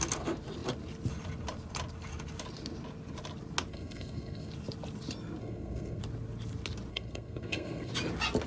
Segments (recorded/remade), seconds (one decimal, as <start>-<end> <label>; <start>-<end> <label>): 0.0-3.7 recorded; 3.7-4.5 remade; 4.5-5.4 recorded; 5.4-6.0 remade; 6.0-6.9 recorded; 6.9-7.9 remade; 7.9-8.5 recorded